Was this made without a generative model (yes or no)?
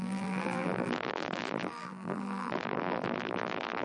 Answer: no